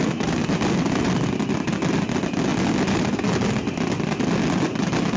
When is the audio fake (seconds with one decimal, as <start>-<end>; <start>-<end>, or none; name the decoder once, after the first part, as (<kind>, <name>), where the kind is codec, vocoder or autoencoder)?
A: none